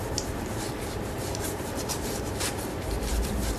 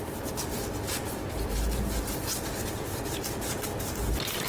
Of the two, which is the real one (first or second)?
second